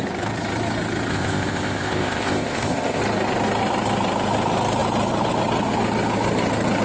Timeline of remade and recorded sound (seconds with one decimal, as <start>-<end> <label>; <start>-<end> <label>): 0.0-1.1 recorded; 1.1-3.0 remade; 3.0-6.8 recorded